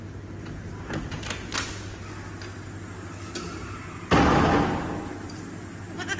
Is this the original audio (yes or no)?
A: yes